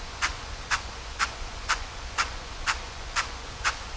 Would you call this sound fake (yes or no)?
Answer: yes